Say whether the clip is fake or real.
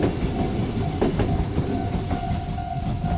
real